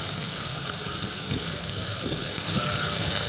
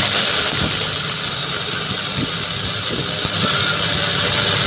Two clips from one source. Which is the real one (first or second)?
second